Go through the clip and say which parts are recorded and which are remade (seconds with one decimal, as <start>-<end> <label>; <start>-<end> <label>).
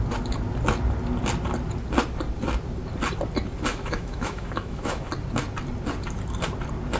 0.0-3.7 recorded; 3.7-5.1 remade; 5.1-7.0 recorded